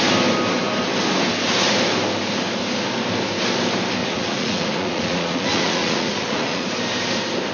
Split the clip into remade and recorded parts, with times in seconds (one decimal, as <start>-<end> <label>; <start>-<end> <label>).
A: 0.0-4.0 recorded; 4.0-6.7 remade; 6.7-7.5 recorded